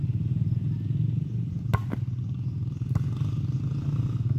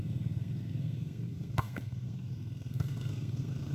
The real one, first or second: first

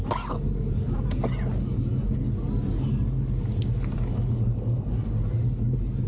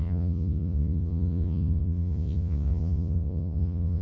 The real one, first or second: first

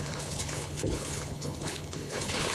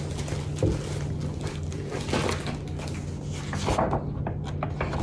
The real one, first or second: second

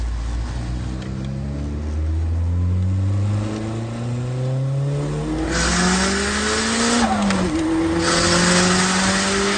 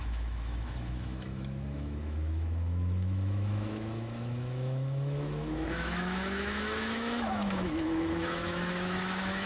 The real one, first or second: first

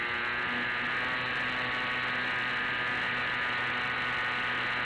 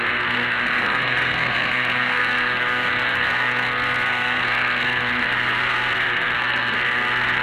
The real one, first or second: first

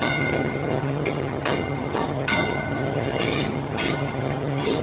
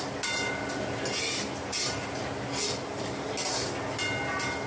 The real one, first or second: second